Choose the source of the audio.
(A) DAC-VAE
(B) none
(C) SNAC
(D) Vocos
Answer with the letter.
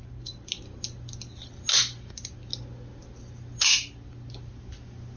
B